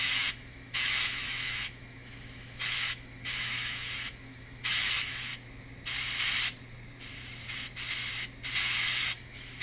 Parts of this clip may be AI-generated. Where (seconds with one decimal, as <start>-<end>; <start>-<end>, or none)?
0.0-5.3; 8.6-9.6